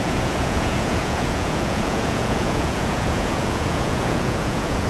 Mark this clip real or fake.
fake